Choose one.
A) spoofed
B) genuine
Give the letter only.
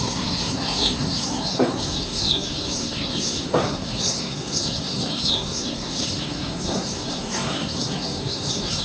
A